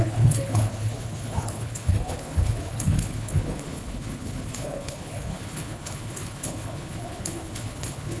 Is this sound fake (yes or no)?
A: yes